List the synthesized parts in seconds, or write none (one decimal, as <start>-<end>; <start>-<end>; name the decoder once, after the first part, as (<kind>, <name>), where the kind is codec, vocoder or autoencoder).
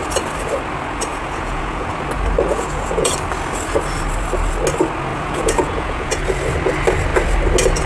1.1-1.9 (vocoder, Vocos); 2.5-3.1; 5.1-6.2